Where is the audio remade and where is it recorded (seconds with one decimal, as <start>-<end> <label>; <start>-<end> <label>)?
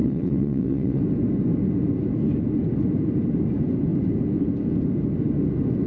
0.0-1.0 remade; 1.0-5.9 recorded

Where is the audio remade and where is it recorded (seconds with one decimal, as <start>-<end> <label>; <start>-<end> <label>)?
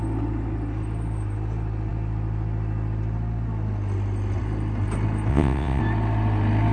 0.0-5.3 recorded; 5.3-5.8 remade; 5.8-6.7 recorded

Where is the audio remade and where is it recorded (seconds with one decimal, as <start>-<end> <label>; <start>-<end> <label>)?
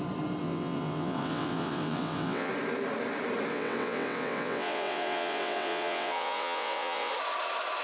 0.0-0.4 recorded; 0.4-2.5 remade; 2.5-3.5 recorded; 3.5-7.1 remade; 7.1-7.8 recorded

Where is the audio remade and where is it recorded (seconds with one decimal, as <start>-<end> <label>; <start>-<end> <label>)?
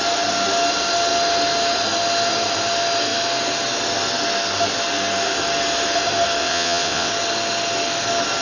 0.0-6.4 recorded; 6.4-7.1 remade; 7.1-8.4 recorded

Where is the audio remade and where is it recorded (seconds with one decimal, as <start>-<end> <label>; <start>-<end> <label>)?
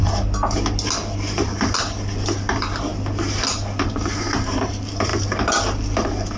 0.0-6.4 recorded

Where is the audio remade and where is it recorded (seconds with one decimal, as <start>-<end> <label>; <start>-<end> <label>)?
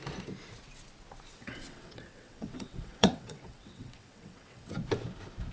0.0-1.4 recorded; 1.4-4.7 remade; 4.7-5.5 recorded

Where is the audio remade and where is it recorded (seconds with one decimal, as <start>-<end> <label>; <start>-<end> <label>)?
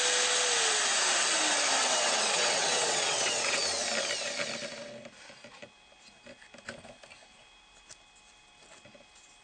0.0-1.8 recorded; 1.8-3.6 remade; 3.6-9.4 recorded